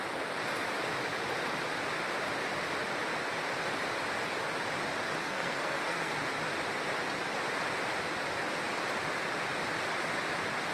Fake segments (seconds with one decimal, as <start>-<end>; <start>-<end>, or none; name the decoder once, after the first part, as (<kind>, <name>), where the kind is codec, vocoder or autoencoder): 5.2-6.1 (codec, SNAC)